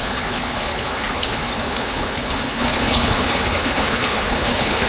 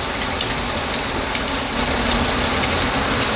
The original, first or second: second